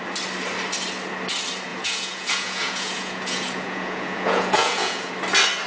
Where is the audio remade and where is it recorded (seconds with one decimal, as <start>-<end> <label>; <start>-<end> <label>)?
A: 0.0-1.7 recorded; 1.7-5.1 remade; 5.1-5.7 recorded

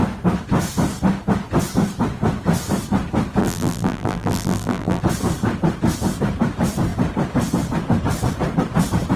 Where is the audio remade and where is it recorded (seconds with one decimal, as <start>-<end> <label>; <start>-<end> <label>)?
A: 0.0-3.4 recorded; 3.4-5.0 remade; 5.0-9.2 recorded

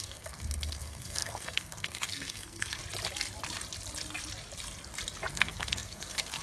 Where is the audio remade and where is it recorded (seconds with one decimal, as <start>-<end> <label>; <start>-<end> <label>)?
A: 0.0-2.8 remade; 2.8-5.3 recorded; 5.3-6.4 remade

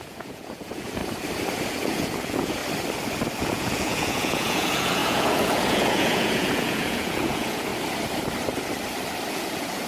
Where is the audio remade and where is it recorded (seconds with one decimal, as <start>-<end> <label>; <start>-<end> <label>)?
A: 0.0-1.0 remade; 1.0-1.7 recorded; 1.7-2.6 remade; 2.6-3.4 recorded; 3.4-7.7 remade; 7.7-9.3 recorded; 9.3-9.9 remade

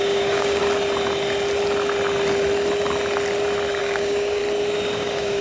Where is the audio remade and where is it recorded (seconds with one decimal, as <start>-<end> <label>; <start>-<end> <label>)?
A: 0.0-0.6 remade; 0.6-3.8 recorded; 3.8-4.4 remade; 4.4-5.0 recorded; 5.0-5.4 remade

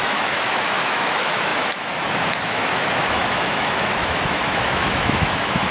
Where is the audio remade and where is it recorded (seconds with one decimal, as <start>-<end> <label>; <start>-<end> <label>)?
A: 0.0-5.7 remade